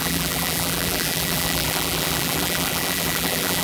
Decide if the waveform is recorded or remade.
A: remade